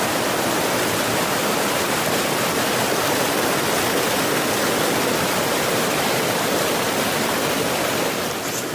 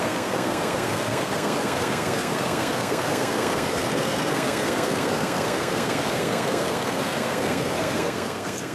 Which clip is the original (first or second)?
first